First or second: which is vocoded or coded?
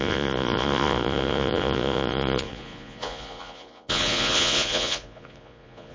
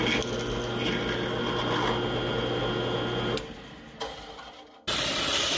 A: first